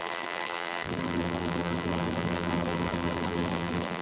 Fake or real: fake